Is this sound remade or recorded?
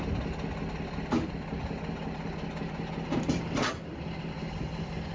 recorded